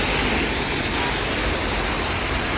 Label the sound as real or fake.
real